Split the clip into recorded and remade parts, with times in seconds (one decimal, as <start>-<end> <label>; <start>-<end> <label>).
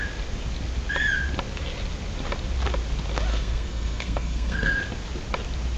0.0-3.3 recorded; 3.3-4.8 remade; 4.8-5.8 recorded